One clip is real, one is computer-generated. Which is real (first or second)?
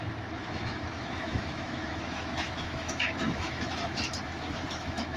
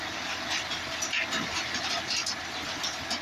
second